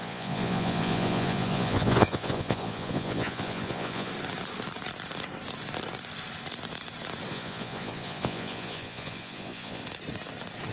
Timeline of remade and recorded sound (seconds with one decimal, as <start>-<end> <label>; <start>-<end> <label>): 0.0-4.1 remade; 4.1-7.3 recorded; 7.3-9.8 remade; 9.8-10.7 recorded